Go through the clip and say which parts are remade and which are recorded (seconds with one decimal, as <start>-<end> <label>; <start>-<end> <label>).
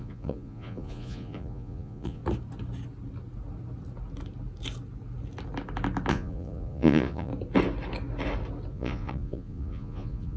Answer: 0.0-2.2 remade; 2.2-6.1 recorded; 6.1-7.3 remade; 7.3-8.7 recorded; 8.7-10.4 remade